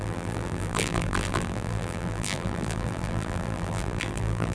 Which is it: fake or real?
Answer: fake